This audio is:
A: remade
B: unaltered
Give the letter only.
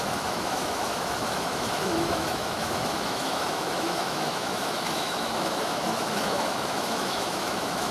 A